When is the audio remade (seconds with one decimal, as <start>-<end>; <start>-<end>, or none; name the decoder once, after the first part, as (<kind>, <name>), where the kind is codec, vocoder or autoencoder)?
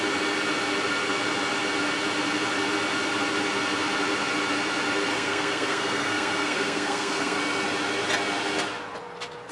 5.1-7.4 (codec, SNAC)